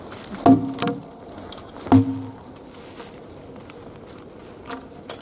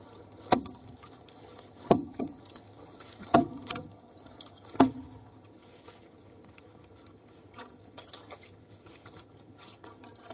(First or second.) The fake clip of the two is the second